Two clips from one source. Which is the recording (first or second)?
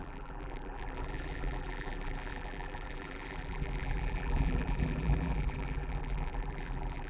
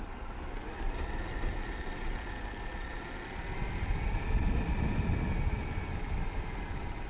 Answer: second